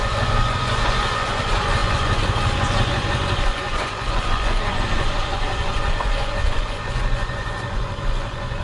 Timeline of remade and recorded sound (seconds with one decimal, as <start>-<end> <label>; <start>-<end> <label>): 0.0-8.6 remade